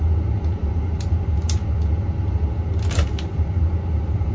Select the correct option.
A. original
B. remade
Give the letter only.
A